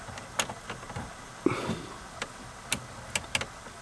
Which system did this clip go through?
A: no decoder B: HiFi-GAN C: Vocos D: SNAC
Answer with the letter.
A